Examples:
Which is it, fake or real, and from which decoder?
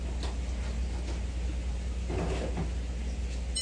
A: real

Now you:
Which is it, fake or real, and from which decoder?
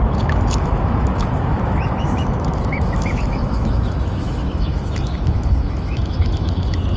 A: fake, autoencoder, DAC-VAE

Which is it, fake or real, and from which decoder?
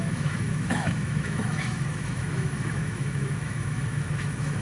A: fake, autoencoder, DAC-VAE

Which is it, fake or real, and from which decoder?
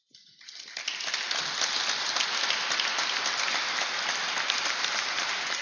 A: real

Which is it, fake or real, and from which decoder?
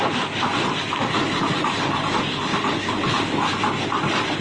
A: real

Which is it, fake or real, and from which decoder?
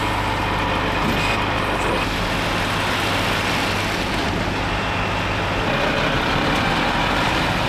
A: real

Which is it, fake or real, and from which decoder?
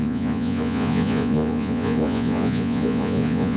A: fake, vocoder, Vocos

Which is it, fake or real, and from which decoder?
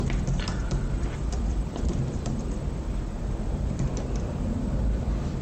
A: fake, vocoder, BigVGAN v2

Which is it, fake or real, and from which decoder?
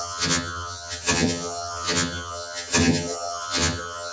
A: fake, vocoder, HiFi-GAN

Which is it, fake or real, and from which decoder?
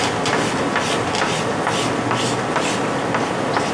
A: real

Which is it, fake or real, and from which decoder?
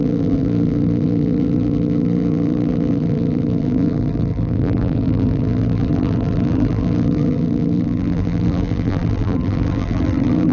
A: fake, vocoder, BigVGAN v2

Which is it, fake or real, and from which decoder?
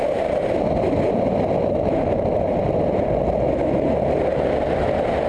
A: real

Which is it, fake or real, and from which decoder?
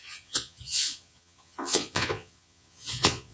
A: fake, vocoder, Vocos